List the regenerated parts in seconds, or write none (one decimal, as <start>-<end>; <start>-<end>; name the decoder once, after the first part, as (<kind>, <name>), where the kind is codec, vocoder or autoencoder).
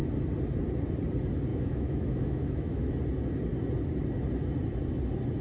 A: 1.5-2.9 (autoencoder, DAC-VAE)